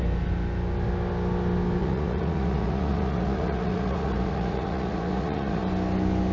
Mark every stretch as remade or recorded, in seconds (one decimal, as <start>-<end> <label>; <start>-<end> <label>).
0.0-1.8 recorded; 1.8-5.6 remade; 5.6-6.3 recorded